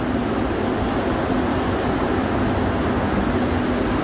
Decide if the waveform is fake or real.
real